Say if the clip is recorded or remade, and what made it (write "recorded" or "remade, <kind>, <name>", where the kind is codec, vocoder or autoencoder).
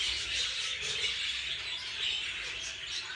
recorded